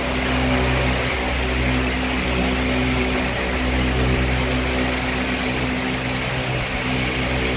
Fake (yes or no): no